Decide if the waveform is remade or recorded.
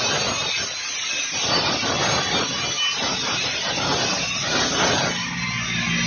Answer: recorded